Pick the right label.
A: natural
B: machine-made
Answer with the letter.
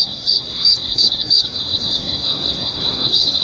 B